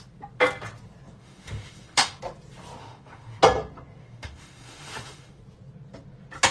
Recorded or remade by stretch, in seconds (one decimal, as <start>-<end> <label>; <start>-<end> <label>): 0.0-1.2 recorded; 1.2-2.2 remade; 2.2-2.8 recorded; 2.8-3.4 remade; 3.4-4.0 recorded; 4.0-5.4 remade; 5.4-6.5 recorded